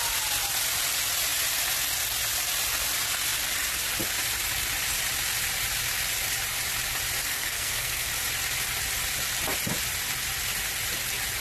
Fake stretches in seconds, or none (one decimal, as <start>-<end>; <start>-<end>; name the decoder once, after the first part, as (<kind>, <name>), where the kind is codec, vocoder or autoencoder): 7.2-8.1 (codec, SNAC)